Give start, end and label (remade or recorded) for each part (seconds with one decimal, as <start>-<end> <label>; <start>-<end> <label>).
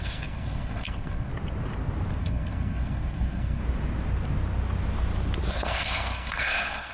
0.0-1.3 remade; 1.3-2.2 recorded; 2.2-3.6 remade; 3.6-5.5 recorded; 5.5-6.9 remade